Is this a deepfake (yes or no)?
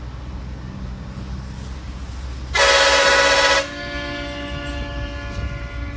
no